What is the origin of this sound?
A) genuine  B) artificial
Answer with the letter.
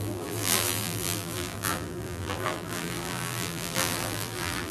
B